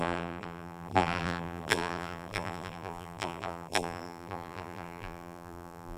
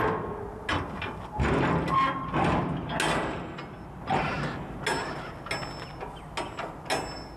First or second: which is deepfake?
first